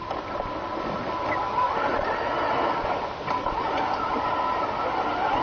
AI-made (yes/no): no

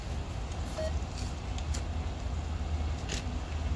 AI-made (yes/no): no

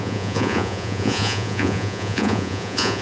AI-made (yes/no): yes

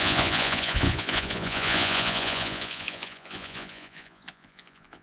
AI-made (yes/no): yes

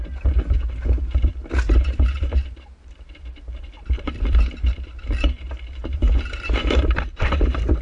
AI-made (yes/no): yes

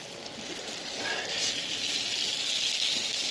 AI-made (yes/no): no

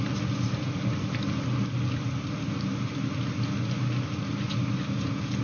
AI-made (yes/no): no